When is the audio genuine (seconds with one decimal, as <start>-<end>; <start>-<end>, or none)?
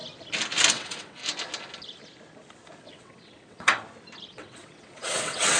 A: 0.0-0.7; 1.2-2.8; 3.7-4.3